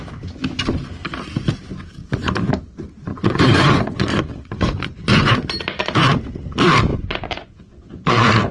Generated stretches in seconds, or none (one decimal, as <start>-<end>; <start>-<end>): 2.0-2.5; 3.1-5.5; 6.9-8.1